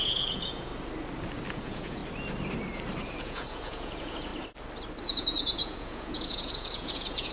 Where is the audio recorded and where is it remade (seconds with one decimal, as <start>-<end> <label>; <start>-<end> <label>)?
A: 0.0-0.7 remade; 0.7-1.5 recorded; 1.5-2.0 remade; 2.0-3.2 recorded; 3.2-4.3 remade; 4.3-5.1 recorded; 5.1-7.3 remade